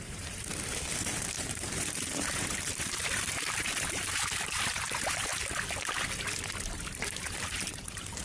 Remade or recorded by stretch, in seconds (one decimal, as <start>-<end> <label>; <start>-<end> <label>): 0.0-0.5 remade; 0.5-1.2 recorded; 1.2-5.3 remade; 5.3-7.1 recorded; 7.1-8.2 remade